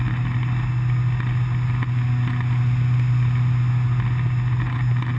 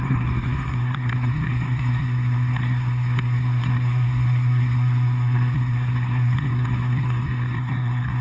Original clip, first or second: first